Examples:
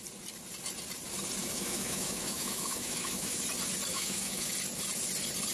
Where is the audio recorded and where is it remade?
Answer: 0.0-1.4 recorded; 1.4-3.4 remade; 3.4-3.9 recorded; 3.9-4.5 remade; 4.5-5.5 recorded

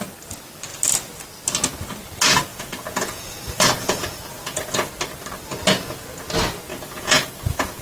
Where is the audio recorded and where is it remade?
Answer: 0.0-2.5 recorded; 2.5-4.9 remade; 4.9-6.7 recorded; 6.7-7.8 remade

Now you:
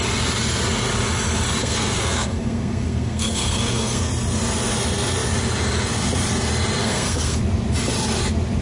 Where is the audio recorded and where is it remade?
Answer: 0.0-1.6 recorded; 1.6-4.1 remade; 4.1-6.8 recorded; 6.8-7.4 remade; 7.4-8.6 recorded